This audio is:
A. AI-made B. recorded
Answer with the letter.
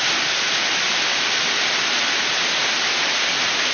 B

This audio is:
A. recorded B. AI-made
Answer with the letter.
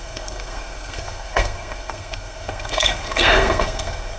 B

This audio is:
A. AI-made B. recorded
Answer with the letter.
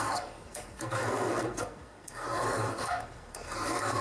A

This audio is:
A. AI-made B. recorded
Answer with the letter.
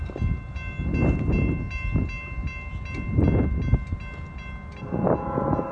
B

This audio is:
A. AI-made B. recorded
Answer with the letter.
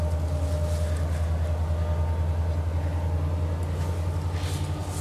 B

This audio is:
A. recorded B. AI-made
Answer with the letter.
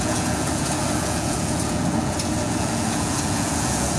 B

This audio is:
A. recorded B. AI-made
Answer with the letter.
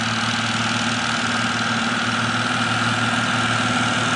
A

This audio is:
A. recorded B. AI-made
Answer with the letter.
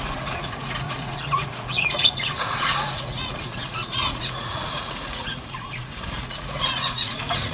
B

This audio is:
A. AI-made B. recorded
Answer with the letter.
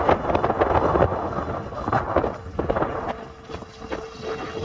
B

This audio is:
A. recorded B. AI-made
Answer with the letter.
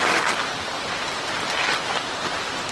A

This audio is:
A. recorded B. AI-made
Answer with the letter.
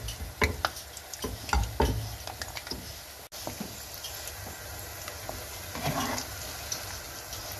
A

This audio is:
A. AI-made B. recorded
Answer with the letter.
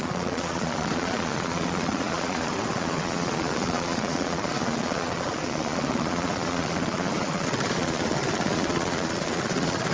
A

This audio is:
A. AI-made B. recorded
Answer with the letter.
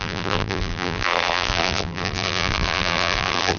A